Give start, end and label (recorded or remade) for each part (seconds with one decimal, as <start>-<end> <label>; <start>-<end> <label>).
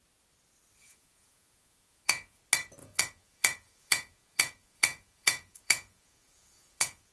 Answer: 0.0-0.8 recorded; 0.8-2.4 remade; 2.4-2.8 recorded; 2.8-7.1 remade